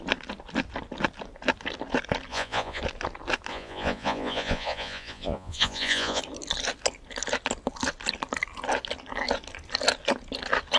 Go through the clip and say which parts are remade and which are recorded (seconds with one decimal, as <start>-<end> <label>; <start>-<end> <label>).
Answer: 0.0-2.3 recorded; 2.3-2.8 remade; 2.8-3.5 recorded; 3.5-6.2 remade; 6.2-10.8 recorded